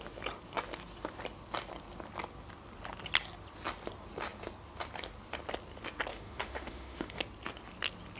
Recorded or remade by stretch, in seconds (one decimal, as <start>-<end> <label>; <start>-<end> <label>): 0.0-6.1 recorded; 6.1-7.2 remade; 7.2-8.2 recorded